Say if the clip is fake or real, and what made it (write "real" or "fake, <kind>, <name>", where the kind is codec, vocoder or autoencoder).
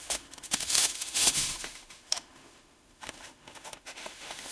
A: fake, autoencoder, DAC-VAE